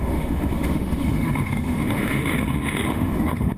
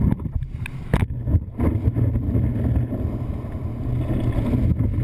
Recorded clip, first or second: second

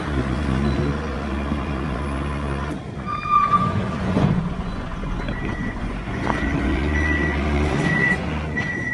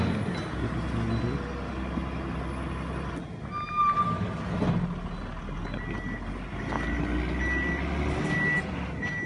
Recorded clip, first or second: second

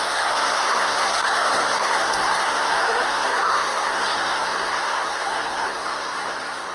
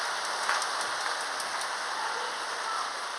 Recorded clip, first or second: second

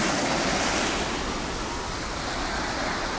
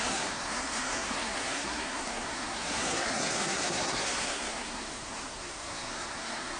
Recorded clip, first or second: first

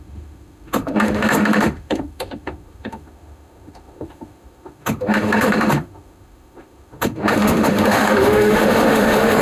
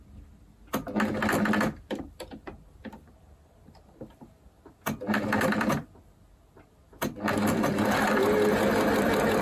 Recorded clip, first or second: second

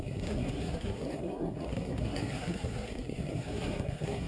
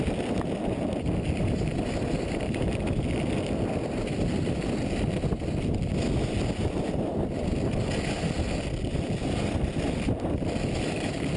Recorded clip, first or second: second